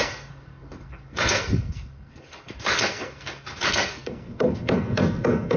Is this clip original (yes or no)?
no